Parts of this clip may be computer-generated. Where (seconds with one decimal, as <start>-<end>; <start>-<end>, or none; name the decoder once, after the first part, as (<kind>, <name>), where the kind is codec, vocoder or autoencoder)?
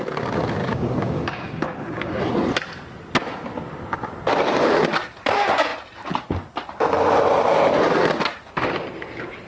0.6-2.2 (codec, DAC)